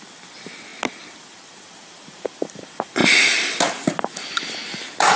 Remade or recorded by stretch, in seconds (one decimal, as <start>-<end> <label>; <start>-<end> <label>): 0.0-5.2 recorded